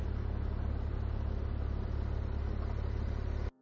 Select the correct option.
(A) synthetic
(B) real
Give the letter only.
B